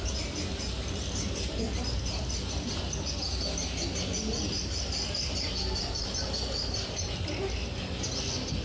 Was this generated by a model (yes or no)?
no